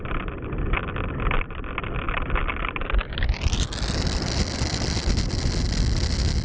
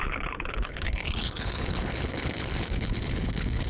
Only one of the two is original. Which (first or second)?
first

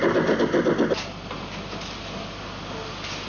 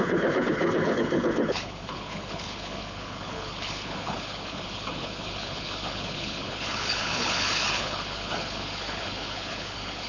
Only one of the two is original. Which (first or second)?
first